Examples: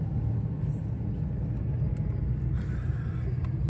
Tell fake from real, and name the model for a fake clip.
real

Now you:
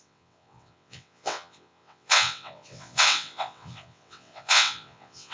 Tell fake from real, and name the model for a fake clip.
fake, vocoder, WaveNeXt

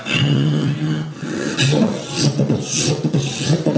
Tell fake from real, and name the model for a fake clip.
fake, vocoder, WaveNeXt